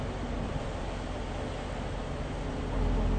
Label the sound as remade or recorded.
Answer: recorded